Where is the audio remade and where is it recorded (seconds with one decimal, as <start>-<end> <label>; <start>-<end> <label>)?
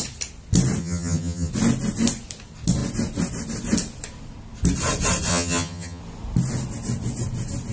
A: 0.0-0.8 recorded; 0.8-1.5 remade; 1.5-5.3 recorded; 5.3-6.0 remade; 6.0-7.7 recorded